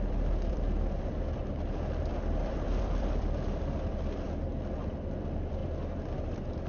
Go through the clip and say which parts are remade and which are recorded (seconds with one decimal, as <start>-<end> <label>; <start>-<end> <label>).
0.0-4.5 remade; 4.5-5.1 recorded; 5.1-6.7 remade